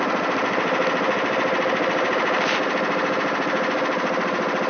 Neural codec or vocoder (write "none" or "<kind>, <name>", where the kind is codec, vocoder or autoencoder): none